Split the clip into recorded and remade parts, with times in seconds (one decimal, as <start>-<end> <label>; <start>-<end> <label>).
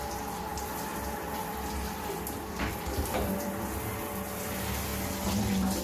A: 0.0-5.8 recorded